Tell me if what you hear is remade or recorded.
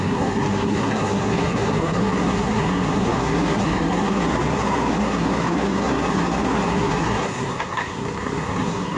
remade